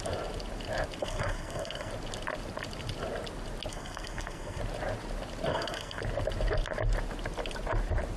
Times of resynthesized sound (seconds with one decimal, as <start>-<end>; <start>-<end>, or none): 1.0-1.9; 3.7-4.6; 5.5-6.0